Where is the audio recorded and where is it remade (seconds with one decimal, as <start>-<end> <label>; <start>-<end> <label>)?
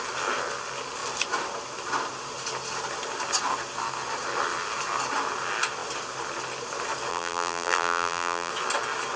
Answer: 0.0-7.1 recorded; 7.1-8.5 remade; 8.5-9.2 recorded